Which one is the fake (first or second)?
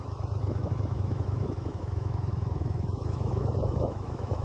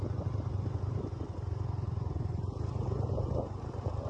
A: first